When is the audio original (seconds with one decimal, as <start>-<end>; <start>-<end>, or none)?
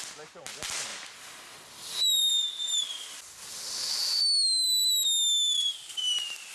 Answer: 0.0-6.5